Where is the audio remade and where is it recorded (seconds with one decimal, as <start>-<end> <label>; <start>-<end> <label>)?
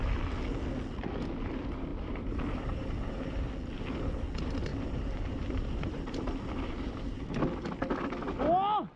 0.0-1.9 recorded; 1.9-3.5 remade; 3.5-4.7 recorded; 4.7-7.4 remade; 7.4-9.0 recorded